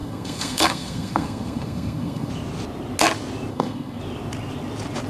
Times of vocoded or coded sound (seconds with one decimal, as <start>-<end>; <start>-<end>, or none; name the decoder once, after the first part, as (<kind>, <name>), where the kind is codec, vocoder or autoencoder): 0.0-2.3 (codec, SNAC); 3.5-4.0